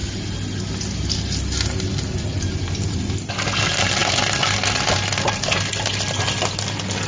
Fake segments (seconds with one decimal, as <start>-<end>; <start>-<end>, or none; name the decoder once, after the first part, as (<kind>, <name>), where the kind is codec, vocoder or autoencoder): none